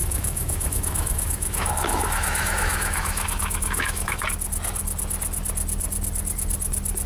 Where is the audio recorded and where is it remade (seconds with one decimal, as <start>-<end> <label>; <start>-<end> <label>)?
0.0-4.2 remade; 4.2-7.1 recorded